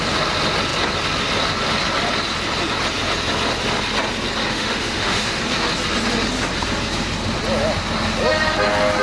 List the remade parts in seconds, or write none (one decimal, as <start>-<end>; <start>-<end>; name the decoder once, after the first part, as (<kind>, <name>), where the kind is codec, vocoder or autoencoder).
4.5-5.4 (autoencoder, DAC-VAE)